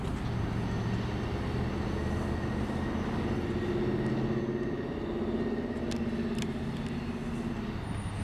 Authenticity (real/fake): real